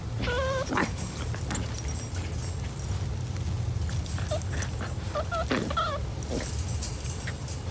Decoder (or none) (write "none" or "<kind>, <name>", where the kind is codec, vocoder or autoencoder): none